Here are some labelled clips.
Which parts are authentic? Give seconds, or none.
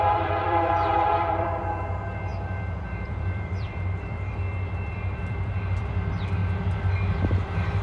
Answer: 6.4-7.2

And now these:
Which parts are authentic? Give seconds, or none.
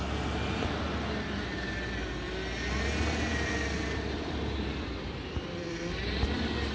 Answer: 0.0-3.3; 6.0-6.7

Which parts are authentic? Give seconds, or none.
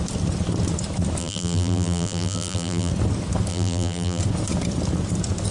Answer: 0.0-1.2; 2.9-3.5; 4.2-5.5